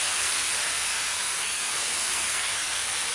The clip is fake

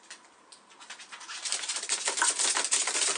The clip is real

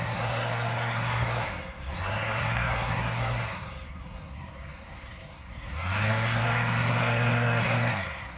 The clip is fake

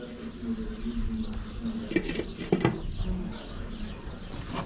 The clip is real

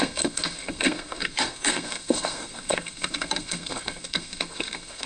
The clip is fake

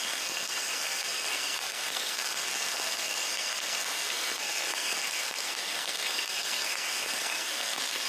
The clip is fake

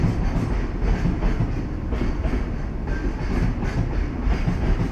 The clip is real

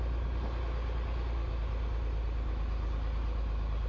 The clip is real